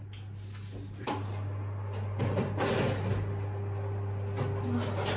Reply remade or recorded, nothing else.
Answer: recorded